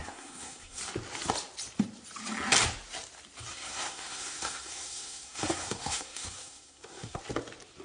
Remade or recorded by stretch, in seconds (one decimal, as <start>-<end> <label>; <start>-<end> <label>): 0.0-0.8 remade; 0.8-3.5 recorded; 3.5-7.2 remade; 7.2-7.8 recorded